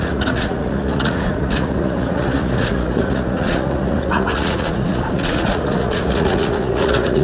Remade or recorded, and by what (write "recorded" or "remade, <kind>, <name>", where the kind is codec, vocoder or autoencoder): remade, vocoder, Vocos